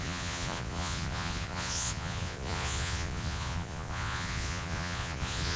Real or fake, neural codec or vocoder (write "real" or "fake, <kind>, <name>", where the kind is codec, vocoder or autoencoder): fake, vocoder, Vocos